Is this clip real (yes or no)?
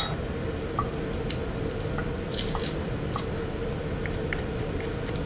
yes